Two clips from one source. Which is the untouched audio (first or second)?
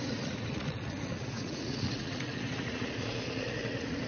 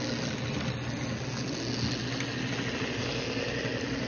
second